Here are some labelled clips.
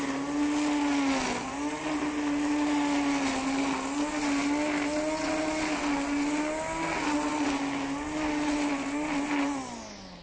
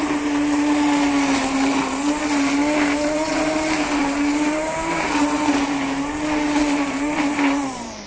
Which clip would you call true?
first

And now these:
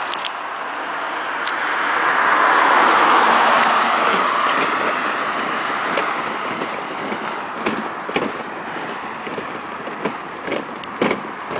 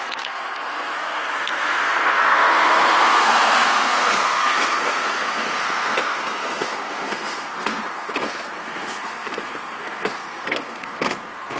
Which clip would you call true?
first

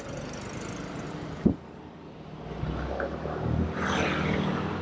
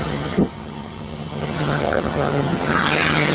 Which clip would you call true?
first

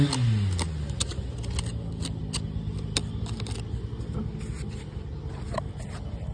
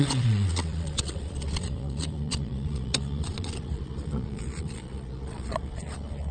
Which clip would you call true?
first